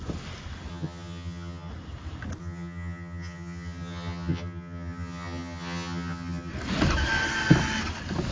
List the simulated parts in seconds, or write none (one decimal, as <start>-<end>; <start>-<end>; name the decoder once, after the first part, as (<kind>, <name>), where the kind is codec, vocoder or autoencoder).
0.7-1.7 (vocoder, HiFi-GAN); 2.4-6.5